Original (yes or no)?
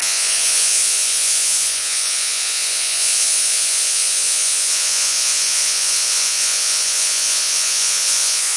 no